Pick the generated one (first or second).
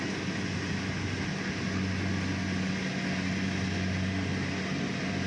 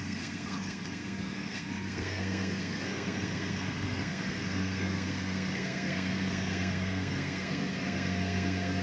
second